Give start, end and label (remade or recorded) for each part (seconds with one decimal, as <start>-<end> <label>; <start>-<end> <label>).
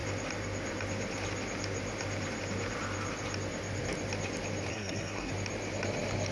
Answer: 0.0-4.7 recorded; 4.7-5.3 remade; 5.3-6.3 recorded